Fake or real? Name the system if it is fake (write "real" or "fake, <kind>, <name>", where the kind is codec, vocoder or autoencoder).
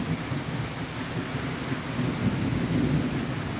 real